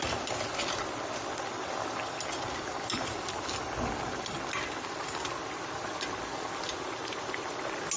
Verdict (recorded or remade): recorded